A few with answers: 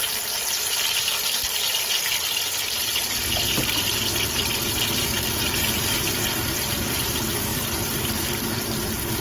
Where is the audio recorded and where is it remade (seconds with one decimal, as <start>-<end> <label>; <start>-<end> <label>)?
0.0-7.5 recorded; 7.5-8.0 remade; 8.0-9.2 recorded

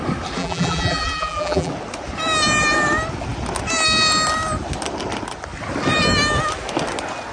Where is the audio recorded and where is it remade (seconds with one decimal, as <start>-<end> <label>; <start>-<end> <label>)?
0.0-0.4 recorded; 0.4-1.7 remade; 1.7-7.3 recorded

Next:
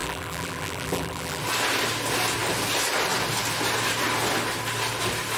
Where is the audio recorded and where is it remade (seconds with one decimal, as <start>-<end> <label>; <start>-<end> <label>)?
0.0-1.4 remade; 1.4-5.4 recorded